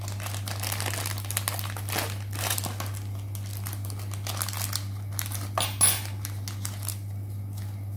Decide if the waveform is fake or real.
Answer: real